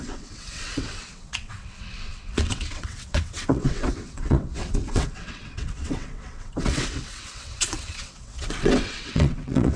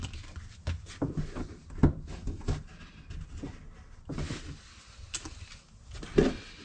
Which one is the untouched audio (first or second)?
second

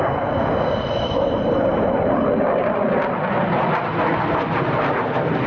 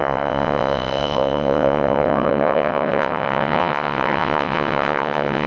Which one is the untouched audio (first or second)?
first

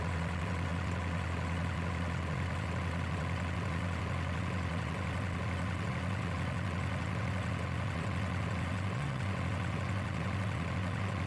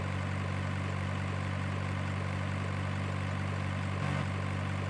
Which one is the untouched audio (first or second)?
second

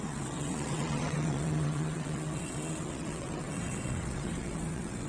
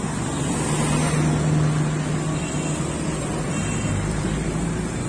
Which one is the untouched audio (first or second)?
second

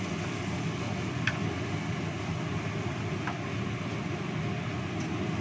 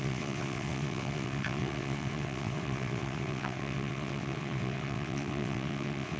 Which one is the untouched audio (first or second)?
first